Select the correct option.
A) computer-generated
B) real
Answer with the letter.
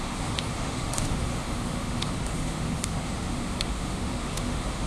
A